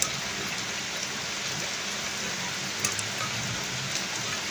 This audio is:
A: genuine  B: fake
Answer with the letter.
A